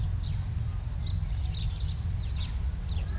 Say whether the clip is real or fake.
real